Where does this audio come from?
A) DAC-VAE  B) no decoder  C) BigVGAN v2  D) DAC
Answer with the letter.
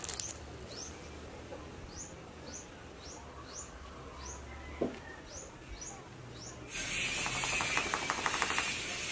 B